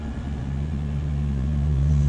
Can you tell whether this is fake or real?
fake